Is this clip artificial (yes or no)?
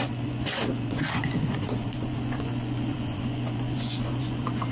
yes